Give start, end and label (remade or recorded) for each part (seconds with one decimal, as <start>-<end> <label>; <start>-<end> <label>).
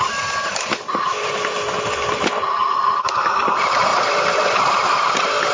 0.0-5.5 recorded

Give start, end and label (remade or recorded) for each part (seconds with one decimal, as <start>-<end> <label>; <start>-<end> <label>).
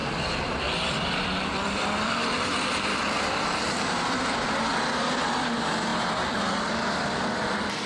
0.0-4.6 remade; 4.6-5.9 recorded; 5.9-7.9 remade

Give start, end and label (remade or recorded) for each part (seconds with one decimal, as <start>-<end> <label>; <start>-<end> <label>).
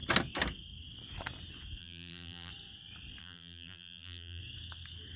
0.0-1.8 recorded; 1.8-2.5 remade; 2.5-3.2 recorded; 3.2-4.4 remade; 4.4-5.2 recorded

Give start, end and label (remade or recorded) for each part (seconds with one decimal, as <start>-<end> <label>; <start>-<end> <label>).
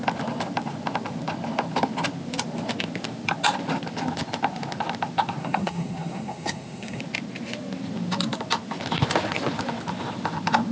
0.0-5.4 recorded; 5.4-7.0 remade; 7.0-10.7 recorded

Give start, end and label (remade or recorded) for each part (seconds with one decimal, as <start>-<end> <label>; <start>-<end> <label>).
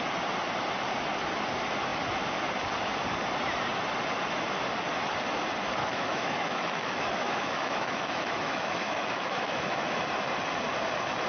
0.0-5.8 recorded; 5.8-9.8 remade; 9.8-11.3 recorded